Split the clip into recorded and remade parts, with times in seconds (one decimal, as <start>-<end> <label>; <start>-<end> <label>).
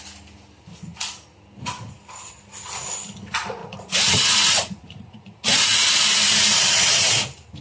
0.0-3.6 recorded; 3.6-7.1 remade; 7.1-7.6 recorded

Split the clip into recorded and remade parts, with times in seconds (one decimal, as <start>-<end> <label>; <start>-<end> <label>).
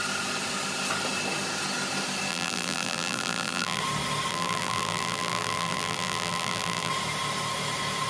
0.0-2.3 recorded; 2.3-3.8 remade; 3.8-4.3 recorded; 4.3-6.9 remade; 6.9-8.1 recorded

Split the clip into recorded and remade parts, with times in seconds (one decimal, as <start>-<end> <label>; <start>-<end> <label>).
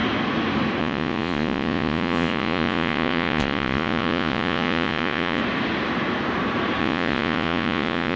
0.0-0.8 recorded; 0.8-5.4 remade; 5.4-6.8 recorded; 6.8-8.2 remade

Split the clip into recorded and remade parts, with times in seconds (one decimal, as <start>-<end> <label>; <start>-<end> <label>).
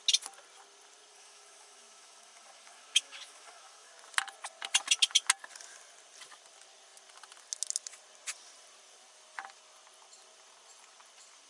0.0-1.1 recorded; 1.1-3.9 remade; 3.9-11.5 recorded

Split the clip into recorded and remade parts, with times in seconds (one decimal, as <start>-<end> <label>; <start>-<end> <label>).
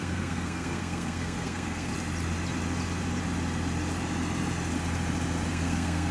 0.0-1.9 remade; 1.9-5.5 recorded; 5.5-6.1 remade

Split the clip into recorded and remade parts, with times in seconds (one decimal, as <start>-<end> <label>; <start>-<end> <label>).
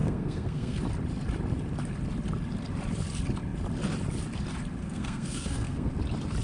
0.0-0.8 remade; 0.8-4.8 recorded; 4.8-5.9 remade; 5.9-6.4 recorded